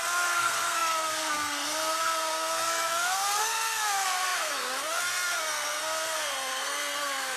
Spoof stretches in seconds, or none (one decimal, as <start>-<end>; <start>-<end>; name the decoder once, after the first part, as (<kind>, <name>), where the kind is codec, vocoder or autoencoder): 0.0-7.4 (codec, SNAC)